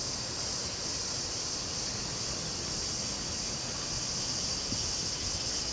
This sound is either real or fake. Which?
real